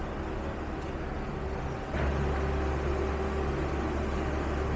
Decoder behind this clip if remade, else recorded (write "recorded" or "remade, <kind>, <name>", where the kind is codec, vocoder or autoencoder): recorded